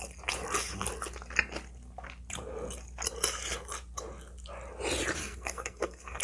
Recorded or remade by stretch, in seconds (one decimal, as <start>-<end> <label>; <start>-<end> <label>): 0.0-5.2 recorded; 5.2-6.2 remade